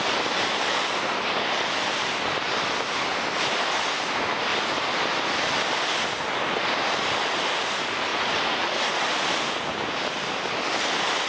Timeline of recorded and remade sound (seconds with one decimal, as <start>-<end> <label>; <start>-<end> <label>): 0.0-8.1 recorded; 8.1-8.9 remade; 8.9-11.3 recorded